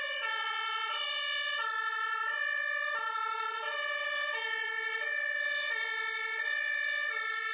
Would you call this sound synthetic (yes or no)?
yes